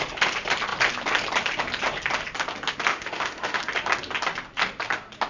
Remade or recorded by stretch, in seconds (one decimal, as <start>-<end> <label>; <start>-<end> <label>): 0.0-2.9 recorded; 2.9-3.6 remade; 3.6-5.3 recorded